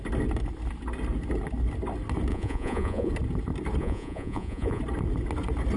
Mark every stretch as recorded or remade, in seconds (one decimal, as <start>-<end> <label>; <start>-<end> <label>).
0.0-2.3 recorded; 2.3-3.1 remade; 3.1-3.8 recorded; 3.8-4.8 remade; 4.8-5.8 recorded